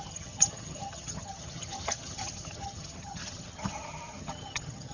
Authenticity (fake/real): fake